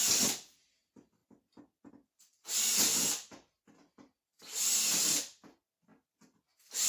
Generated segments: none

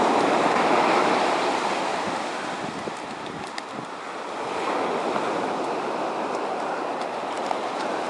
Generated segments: 0.0-1.9; 6.4-8.1